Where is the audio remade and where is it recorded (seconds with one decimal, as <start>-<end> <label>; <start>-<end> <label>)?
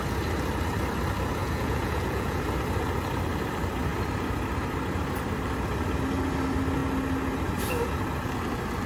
0.0-1.4 recorded; 1.4-2.4 remade; 2.4-8.9 recorded